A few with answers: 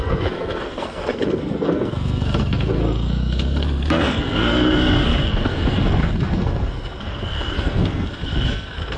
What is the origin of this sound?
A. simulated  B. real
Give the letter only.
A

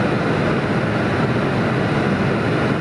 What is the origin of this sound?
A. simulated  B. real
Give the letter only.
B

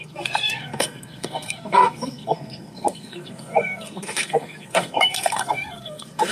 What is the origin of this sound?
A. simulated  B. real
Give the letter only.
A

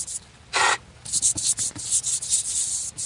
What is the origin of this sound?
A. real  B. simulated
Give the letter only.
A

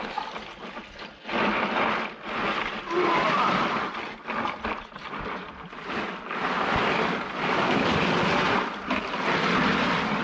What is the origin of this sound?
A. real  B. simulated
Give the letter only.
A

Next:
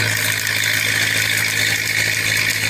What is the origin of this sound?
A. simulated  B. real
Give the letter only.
B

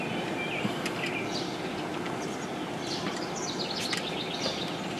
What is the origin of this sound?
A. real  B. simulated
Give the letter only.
A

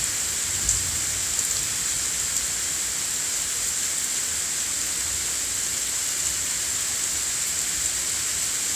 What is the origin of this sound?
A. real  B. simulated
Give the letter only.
A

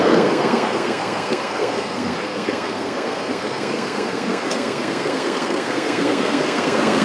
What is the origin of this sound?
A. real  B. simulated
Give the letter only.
B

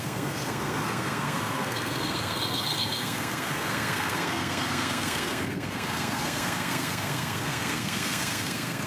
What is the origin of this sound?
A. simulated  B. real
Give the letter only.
A